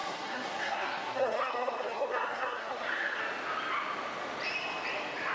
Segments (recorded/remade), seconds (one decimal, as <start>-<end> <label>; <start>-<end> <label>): 0.0-3.2 remade; 3.2-5.3 recorded